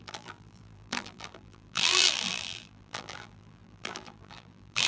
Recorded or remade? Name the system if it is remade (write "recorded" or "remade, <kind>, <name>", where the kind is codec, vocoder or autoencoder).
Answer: remade, vocoder, BigVGAN v2